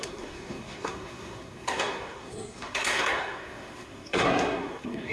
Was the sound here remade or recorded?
remade